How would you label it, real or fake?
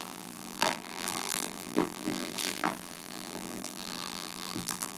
fake